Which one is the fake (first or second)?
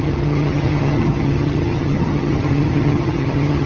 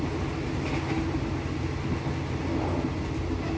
first